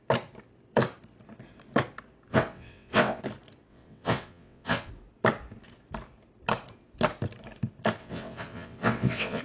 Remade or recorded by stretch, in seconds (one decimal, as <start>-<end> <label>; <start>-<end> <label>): 0.0-2.3 recorded; 2.3-3.2 remade; 3.2-3.7 recorded; 3.7-4.9 remade; 4.9-8.0 recorded; 8.0-9.4 remade